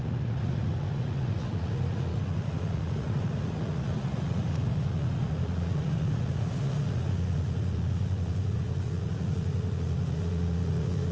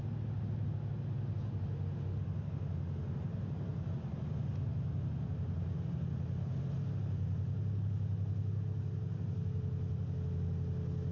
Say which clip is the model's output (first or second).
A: first